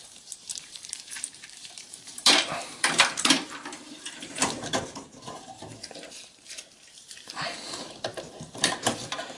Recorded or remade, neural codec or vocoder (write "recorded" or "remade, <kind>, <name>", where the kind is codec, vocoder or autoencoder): remade, vocoder, BigVGAN v2